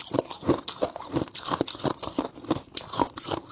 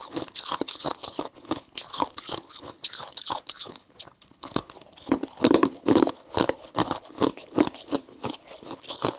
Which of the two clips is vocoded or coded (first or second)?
second